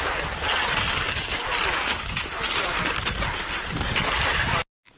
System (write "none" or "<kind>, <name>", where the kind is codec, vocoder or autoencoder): none